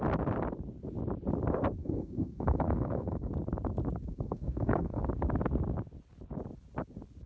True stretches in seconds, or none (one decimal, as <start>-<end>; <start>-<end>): 0.0-1.8; 3.3-4.1; 5.0-7.3